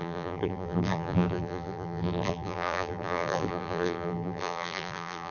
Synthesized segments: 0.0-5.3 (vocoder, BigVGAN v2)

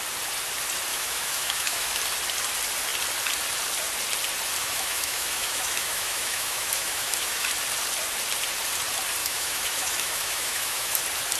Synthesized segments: 0.9-2.0 (autoencoder, DAC-VAE); 4.6-7.5; 9.2-11.0

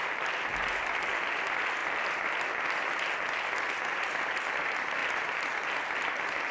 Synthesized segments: none

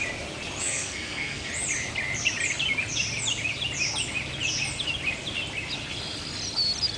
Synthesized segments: 0.6-1.5 (codec, SNAC)

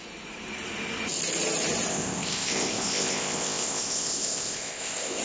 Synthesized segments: 1.9-5.2 (codec, ZipCodec)

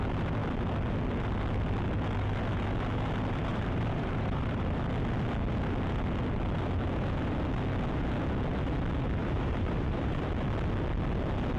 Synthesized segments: 3.5-4.8 (vocoder, BigVGAN v2); 9.2-10.3

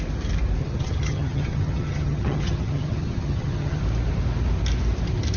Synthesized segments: 0.6-3.8 (vocoder, HiFi-GAN)